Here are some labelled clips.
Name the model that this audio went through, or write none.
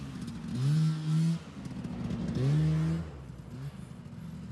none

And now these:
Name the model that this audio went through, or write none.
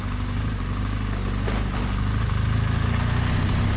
none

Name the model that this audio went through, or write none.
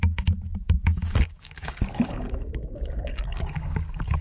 codec, DAC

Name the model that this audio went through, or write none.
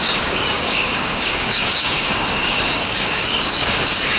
codec, DAC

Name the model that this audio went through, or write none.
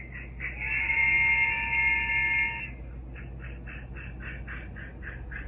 none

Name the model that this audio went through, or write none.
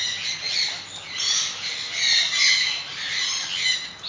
none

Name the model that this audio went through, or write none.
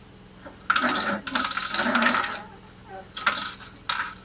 none